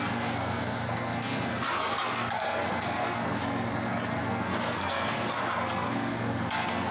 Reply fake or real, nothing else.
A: fake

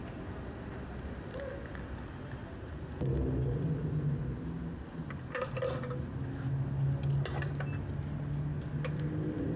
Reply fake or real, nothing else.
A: real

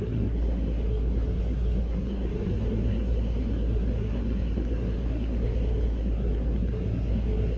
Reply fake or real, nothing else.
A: fake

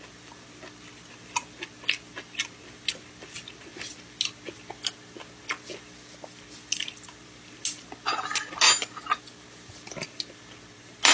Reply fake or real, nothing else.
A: real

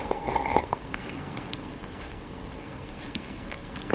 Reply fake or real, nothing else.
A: fake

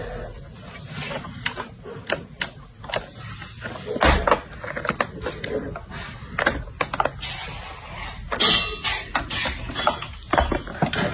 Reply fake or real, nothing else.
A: real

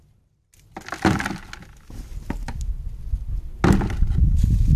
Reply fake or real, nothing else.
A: real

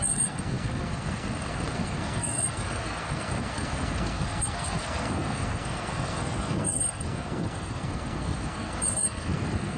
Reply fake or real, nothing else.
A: fake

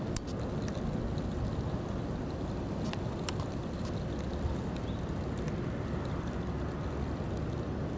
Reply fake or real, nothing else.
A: real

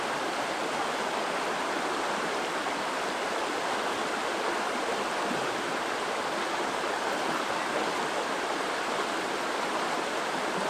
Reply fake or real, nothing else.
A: real